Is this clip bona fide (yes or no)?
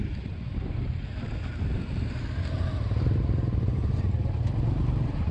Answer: yes